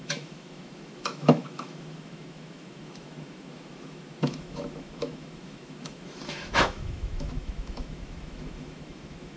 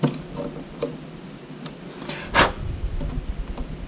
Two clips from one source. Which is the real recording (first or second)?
second